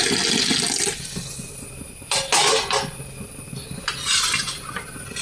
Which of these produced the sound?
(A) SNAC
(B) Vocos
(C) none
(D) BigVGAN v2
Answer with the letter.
C